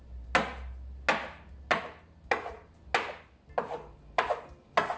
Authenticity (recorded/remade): recorded